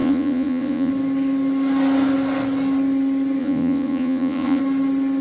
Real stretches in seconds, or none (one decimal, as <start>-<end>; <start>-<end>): 0.9-3.4; 4.6-5.2